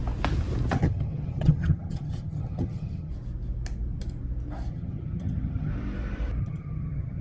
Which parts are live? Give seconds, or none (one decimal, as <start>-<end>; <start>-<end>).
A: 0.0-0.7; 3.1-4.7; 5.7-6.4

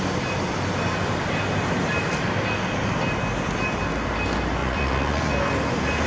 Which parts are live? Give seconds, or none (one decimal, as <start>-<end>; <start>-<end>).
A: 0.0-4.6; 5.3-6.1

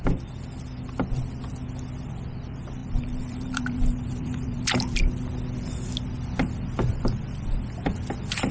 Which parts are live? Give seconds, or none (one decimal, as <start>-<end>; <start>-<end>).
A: 0.0-2.8; 5.1-8.5